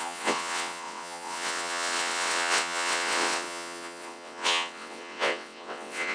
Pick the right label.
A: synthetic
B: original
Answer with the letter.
A